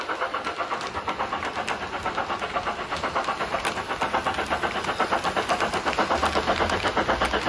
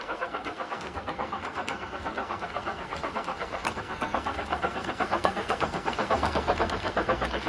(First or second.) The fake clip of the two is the second